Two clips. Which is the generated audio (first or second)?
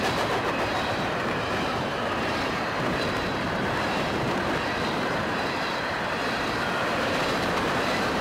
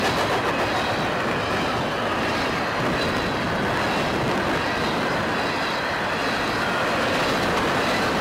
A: first